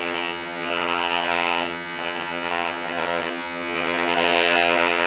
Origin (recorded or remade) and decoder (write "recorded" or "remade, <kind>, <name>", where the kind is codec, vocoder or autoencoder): remade, vocoder, HiFi-GAN